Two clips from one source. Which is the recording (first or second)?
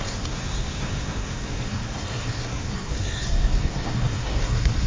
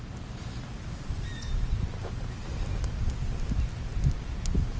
second